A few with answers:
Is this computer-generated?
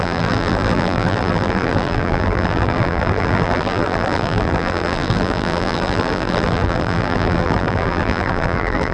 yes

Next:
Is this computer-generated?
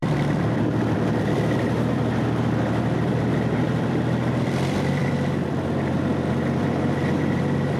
yes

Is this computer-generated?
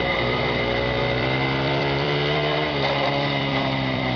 yes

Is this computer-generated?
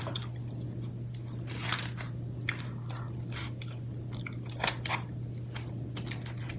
no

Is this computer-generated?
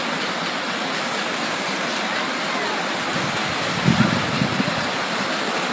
yes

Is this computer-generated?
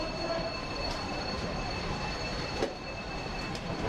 yes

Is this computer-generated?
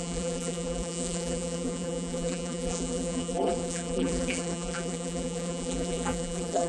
yes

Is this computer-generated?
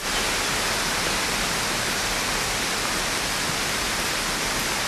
no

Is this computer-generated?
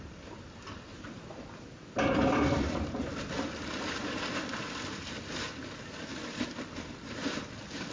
yes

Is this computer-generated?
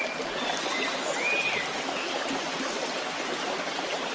no